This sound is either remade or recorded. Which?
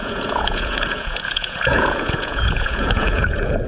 remade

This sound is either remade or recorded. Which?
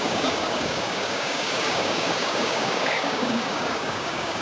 remade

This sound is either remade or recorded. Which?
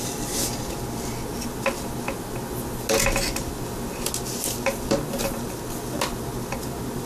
recorded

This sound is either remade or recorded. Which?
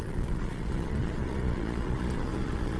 remade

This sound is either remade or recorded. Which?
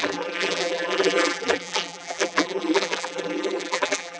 remade